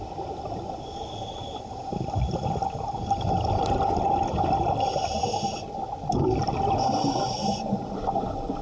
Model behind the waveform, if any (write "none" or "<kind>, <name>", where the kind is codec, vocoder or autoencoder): none